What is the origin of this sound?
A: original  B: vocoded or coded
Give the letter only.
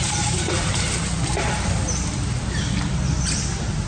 A